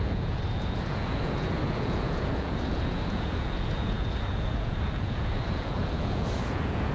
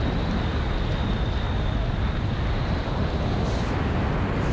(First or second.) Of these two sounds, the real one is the second